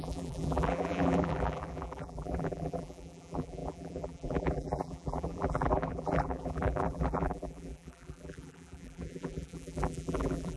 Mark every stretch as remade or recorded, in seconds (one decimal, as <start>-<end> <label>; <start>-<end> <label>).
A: 0.0-10.6 remade